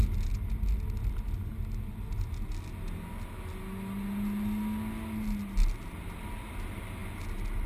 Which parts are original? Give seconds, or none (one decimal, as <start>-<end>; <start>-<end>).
0.0-7.7